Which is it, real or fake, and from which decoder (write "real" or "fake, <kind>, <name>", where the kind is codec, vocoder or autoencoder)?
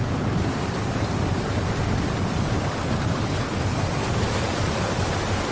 fake, vocoder, BigVGAN v2